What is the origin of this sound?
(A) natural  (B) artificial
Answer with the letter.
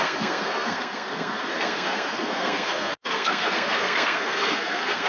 B